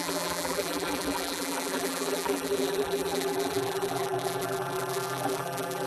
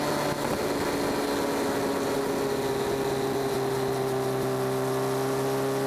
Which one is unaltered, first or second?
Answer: second